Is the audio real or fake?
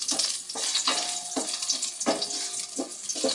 real